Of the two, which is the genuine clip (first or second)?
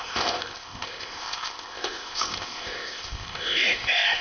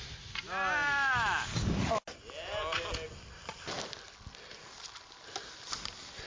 second